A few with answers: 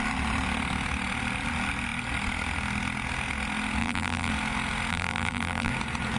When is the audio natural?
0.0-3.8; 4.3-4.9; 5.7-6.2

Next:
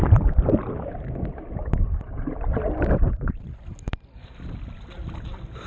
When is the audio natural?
0.0-2.5; 3.3-5.7